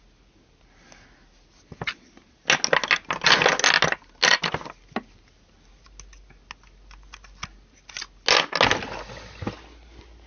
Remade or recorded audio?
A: recorded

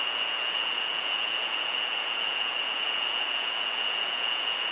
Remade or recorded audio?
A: remade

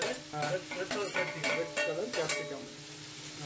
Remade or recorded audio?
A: recorded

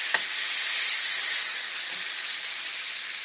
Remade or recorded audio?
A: recorded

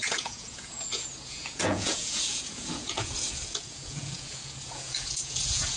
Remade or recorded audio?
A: remade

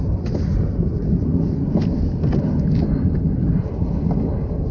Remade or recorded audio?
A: recorded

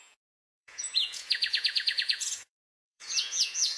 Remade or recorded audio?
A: remade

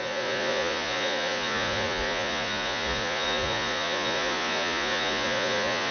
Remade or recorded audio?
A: remade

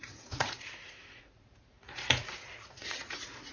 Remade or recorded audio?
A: remade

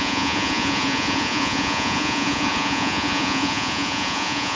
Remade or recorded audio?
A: remade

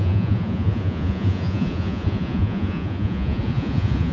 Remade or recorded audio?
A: remade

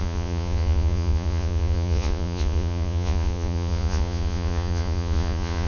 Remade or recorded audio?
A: remade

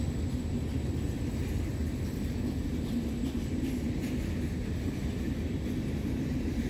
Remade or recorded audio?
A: recorded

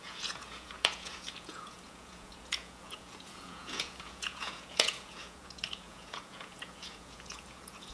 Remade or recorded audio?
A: remade